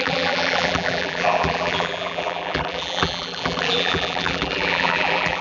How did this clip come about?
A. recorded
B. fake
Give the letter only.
B